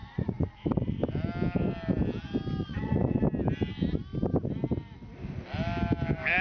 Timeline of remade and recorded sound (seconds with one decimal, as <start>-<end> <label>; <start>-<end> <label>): 0.0-1.0 remade; 1.0-2.6 recorded; 2.6-3.2 remade; 3.2-6.4 recorded